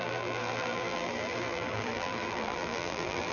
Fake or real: fake